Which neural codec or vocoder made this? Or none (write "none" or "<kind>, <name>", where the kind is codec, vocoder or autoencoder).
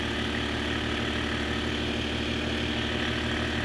none